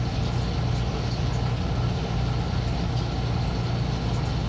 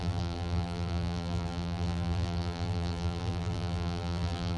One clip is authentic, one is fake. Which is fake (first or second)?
second